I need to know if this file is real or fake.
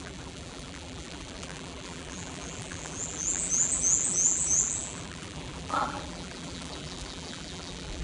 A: fake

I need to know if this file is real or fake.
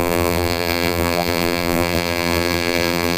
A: fake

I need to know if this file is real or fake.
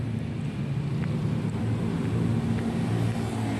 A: real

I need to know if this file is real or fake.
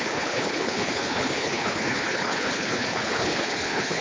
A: fake